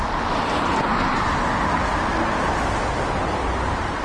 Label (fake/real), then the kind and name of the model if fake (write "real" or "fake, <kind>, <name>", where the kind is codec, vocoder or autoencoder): real